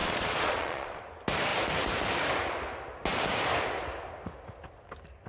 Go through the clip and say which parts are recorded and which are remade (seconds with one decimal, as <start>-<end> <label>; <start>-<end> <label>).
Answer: 0.0-1.0 remade; 1.0-5.3 recorded